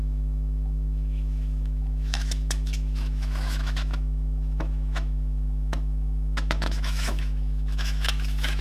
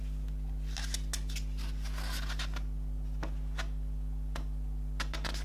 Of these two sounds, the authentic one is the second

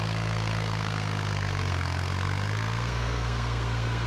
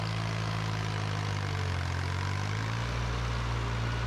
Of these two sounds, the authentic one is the second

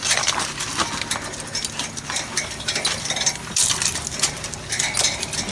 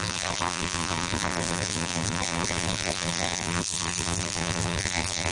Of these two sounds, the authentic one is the first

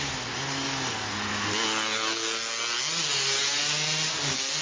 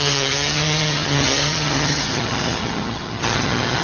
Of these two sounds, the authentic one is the first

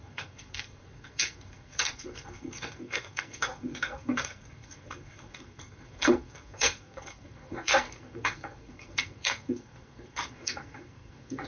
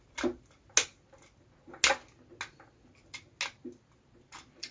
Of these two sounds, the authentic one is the second